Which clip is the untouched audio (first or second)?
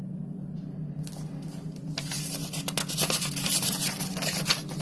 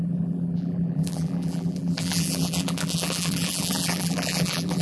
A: first